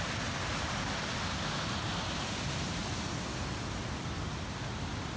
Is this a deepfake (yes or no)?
no